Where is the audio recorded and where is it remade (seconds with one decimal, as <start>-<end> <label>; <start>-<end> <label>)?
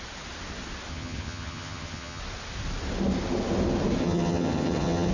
0.0-0.9 recorded; 0.9-2.2 remade; 2.2-4.0 recorded; 4.0-5.1 remade